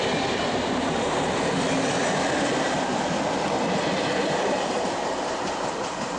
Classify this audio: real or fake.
real